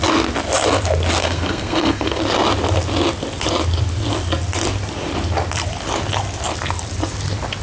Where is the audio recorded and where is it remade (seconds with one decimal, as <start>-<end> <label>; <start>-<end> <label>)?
0.0-1.2 recorded; 1.2-2.2 remade; 2.2-7.6 recorded